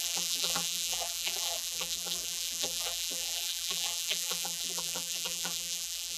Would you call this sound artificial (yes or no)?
yes